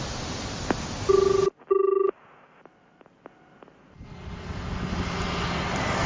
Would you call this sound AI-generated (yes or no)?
no